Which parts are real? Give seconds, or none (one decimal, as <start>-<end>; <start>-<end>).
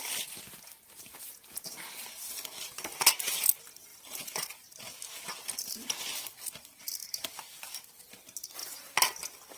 0.0-3.9; 4.8-7.0; 8.0-9.6